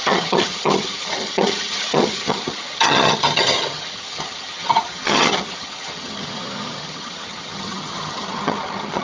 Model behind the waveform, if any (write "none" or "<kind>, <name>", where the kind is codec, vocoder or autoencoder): vocoder, HiFi-GAN